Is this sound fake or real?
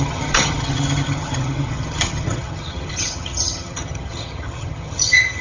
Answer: fake